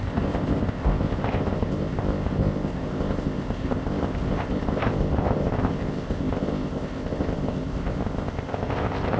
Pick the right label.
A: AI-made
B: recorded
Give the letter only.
A